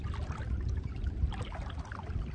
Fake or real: real